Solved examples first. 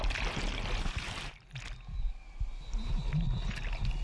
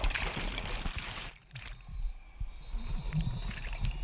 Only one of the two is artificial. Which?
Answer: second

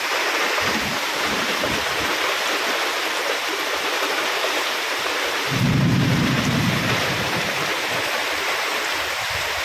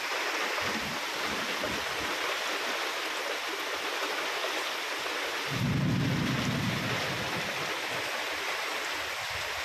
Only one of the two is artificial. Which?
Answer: first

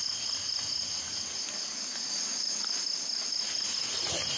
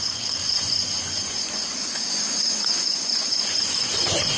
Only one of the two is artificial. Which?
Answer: second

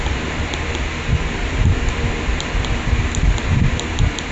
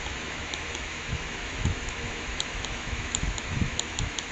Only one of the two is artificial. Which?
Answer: second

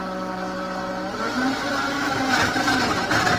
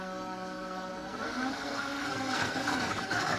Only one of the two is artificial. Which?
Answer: second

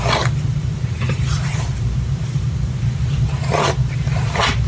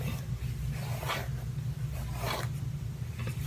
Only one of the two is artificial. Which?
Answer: first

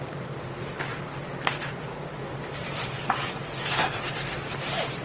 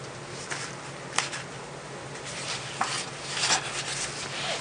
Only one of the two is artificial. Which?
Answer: first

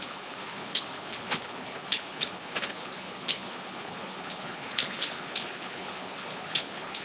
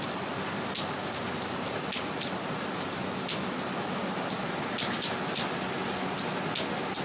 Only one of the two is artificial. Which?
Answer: first